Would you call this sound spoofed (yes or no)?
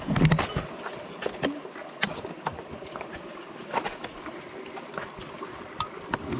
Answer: no